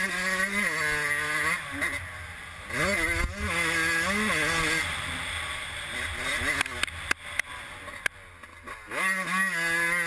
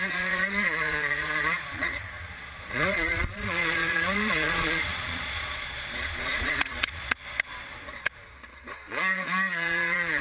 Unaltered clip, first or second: first